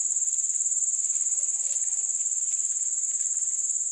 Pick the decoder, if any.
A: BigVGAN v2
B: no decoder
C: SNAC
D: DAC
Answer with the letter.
A